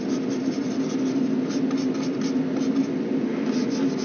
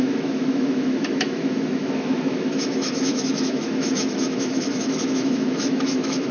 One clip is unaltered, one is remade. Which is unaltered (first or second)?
first